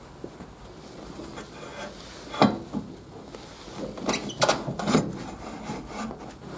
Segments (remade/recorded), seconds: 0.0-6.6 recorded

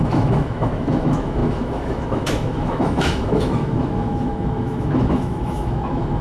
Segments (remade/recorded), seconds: 0.0-6.2 remade

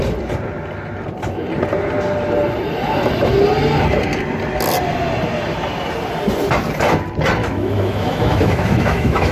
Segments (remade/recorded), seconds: 0.0-7.4 recorded; 7.4-9.3 remade

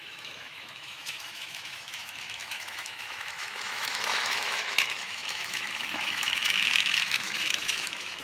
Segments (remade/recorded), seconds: 0.0-8.2 remade

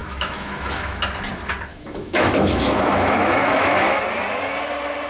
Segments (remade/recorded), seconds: 0.0-1.0 remade; 1.0-1.7 recorded; 1.7-4.0 remade; 4.0-5.1 recorded

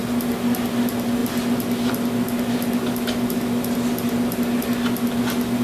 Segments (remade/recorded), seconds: 0.0-5.6 recorded